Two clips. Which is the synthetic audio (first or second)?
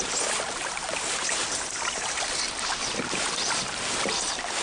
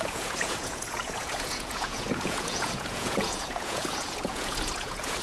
second